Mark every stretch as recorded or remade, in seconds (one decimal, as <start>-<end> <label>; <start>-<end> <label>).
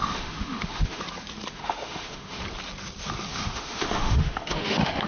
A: 0.0-1.0 remade; 1.0-1.5 recorded; 1.5-2.4 remade; 2.4-3.3 recorded; 3.3-5.1 remade